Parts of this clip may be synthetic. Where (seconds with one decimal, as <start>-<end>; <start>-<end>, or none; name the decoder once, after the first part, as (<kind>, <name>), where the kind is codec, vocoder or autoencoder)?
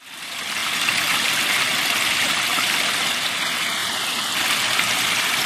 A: 2.5-3.3 (vocoder, BigVGAN v2); 3.8-4.4